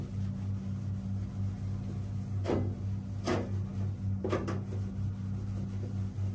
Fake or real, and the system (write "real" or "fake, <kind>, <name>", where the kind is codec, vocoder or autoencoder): real